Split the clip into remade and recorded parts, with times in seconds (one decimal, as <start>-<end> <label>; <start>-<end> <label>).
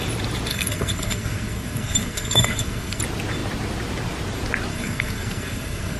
0.0-0.5 recorded; 0.5-3.0 remade; 3.0-4.7 recorded; 4.7-6.0 remade